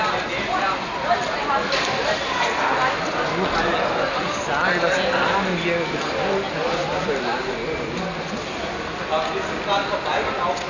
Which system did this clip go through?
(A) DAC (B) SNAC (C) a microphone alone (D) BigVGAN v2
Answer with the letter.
C